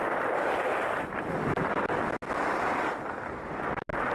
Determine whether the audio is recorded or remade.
recorded